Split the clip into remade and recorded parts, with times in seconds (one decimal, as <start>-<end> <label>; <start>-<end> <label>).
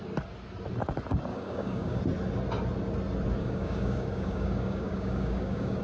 0.0-1.3 recorded; 1.3-2.0 remade; 2.0-3.4 recorded; 3.4-5.8 remade